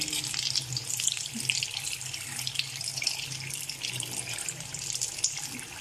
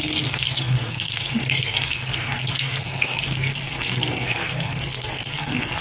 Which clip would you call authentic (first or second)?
first